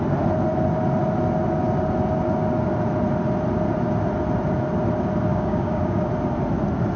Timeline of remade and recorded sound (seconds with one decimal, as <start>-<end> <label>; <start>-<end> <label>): 0.0-5.3 recorded; 5.3-6.1 remade; 6.1-7.0 recorded